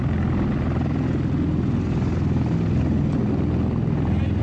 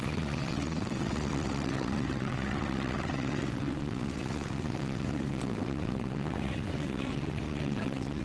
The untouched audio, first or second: first